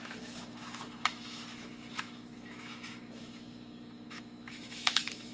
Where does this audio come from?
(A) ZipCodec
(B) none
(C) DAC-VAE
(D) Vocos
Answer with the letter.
C